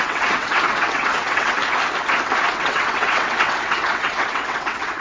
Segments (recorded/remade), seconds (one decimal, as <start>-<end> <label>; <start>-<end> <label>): 0.0-1.6 remade; 1.6-2.5 recorded; 2.5-5.0 remade